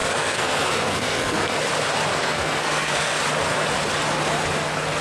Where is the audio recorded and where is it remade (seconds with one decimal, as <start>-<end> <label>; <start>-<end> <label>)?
0.0-1.6 remade; 1.6-2.1 recorded; 2.1-3.2 remade; 3.2-5.0 recorded